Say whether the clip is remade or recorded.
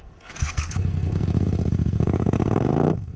remade